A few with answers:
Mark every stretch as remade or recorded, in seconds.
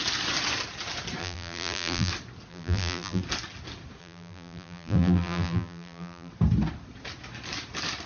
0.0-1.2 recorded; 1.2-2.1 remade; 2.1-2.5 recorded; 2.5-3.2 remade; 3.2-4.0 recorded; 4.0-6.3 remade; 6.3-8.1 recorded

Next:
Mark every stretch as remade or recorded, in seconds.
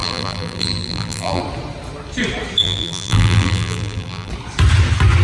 0.0-1.4 remade; 1.4-2.6 recorded; 2.6-4.3 remade; 4.3-5.2 recorded